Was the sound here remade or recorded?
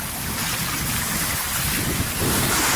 recorded